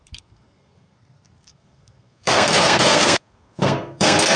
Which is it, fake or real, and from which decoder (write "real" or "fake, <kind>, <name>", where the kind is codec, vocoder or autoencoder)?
fake, codec, SNAC